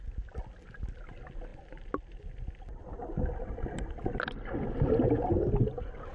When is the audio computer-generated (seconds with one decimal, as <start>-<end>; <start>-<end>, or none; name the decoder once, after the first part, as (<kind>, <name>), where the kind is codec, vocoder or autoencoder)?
none